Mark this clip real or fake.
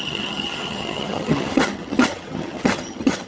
fake